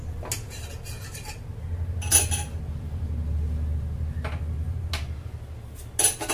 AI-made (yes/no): no